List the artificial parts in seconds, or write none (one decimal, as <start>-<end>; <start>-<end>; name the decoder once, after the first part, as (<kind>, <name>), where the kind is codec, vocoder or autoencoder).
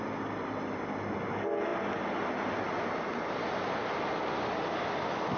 none